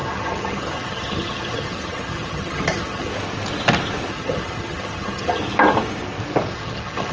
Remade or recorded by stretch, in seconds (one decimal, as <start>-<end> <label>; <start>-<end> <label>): 0.0-3.1 remade; 3.1-4.1 recorded; 4.1-5.4 remade; 5.4-6.5 recorded; 6.5-7.1 remade